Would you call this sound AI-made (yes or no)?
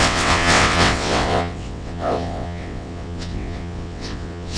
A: yes